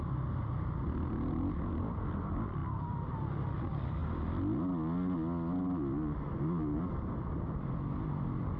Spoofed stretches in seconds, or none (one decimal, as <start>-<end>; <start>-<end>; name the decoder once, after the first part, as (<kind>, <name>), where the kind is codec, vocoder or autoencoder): 0.0-4.0 (vocoder, BigVGAN v2); 8.1-8.6